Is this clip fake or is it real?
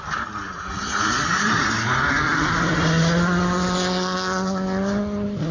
real